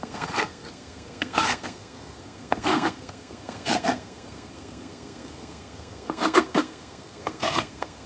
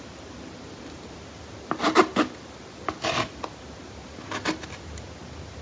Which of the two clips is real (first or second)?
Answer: second